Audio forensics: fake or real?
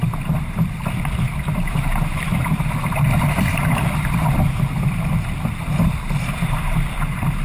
fake